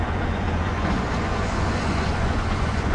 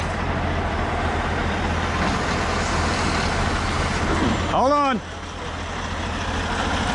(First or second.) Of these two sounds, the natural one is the second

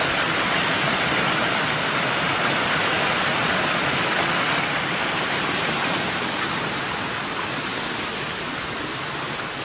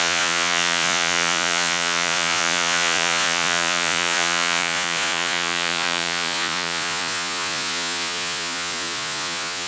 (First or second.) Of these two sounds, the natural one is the first